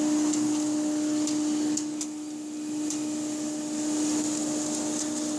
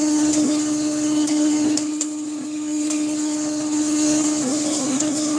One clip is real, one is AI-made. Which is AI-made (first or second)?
second